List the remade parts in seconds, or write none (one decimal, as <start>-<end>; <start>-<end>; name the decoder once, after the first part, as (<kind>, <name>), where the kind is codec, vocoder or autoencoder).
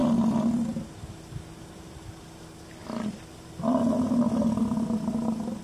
none